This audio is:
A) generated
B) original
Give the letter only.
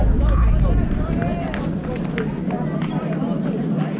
B